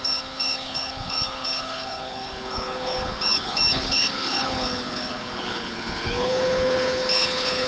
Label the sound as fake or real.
fake